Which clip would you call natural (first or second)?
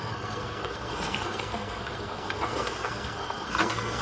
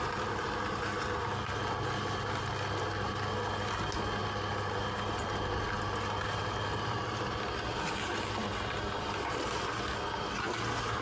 second